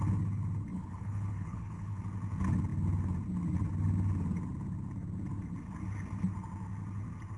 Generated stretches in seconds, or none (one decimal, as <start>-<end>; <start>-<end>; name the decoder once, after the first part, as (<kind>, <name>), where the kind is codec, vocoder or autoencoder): 0.7-2.0 (codec, HILCodec)